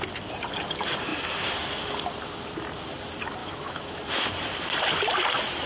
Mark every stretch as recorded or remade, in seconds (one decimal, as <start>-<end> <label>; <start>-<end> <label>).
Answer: 0.0-3.4 recorded; 3.4-4.0 remade; 4.0-5.7 recorded